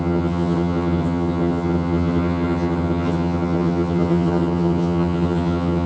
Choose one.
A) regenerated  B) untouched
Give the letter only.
A